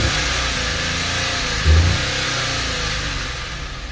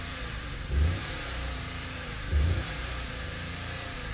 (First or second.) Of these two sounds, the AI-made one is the second